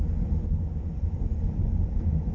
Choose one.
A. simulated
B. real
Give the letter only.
B